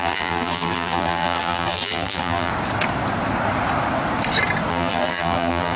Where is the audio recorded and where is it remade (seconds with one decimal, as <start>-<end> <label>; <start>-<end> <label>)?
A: 0.0-2.5 remade; 2.5-4.7 recorded; 4.7-5.8 remade